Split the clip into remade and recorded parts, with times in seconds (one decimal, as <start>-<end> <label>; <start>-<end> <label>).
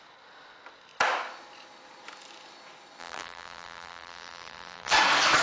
0.0-3.0 recorded; 3.0-4.9 remade; 4.9-5.4 recorded